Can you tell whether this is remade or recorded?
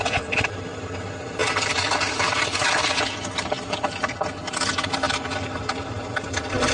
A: remade